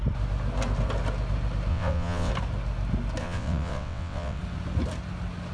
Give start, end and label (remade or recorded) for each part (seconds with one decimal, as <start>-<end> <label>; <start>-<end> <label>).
0.0-1.7 recorded; 1.7-2.3 remade; 2.3-3.2 recorded; 3.2-4.4 remade; 4.4-5.5 recorded